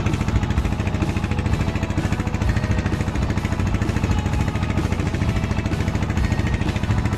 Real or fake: real